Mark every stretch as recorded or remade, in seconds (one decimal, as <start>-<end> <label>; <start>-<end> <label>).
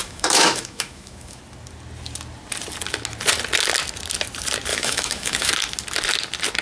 0.0-1.4 remade; 1.4-4.7 recorded; 4.7-5.5 remade; 5.5-6.6 recorded